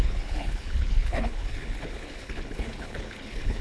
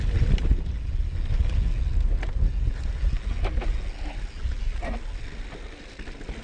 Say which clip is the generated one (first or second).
first